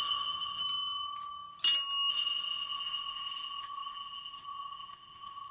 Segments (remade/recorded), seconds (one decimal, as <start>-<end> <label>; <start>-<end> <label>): 0.0-0.6 remade; 0.6-2.1 recorded; 2.1-5.5 remade